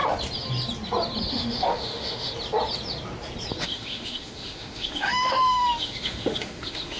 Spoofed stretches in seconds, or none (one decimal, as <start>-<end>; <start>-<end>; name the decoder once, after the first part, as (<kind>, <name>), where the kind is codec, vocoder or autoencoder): 1.3-2.3 (autoencoder, DAC-VAE); 3.6-7.0